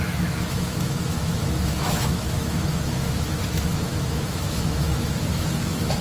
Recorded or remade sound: remade